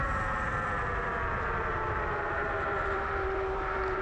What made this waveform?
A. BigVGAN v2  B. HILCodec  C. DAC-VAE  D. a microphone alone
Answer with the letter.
A